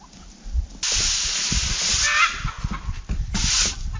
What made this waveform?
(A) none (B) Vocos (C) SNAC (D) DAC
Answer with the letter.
A